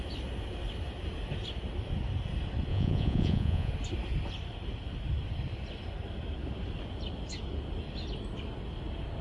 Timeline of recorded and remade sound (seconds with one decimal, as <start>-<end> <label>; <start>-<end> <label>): 0.0-2.7 recorded; 2.7-3.7 remade; 3.7-9.2 recorded